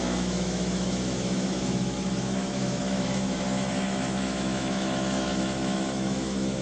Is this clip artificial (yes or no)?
yes